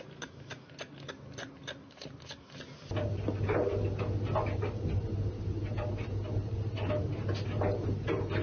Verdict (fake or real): real